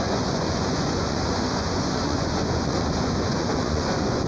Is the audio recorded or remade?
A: remade